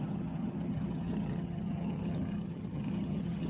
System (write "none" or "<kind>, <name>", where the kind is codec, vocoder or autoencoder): vocoder, HiFi-GAN